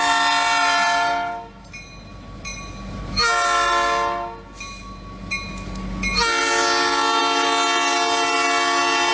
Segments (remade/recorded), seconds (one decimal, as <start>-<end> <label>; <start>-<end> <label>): 0.0-9.1 recorded